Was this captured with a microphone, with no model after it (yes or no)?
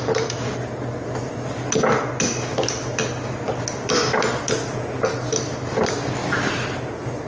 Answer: yes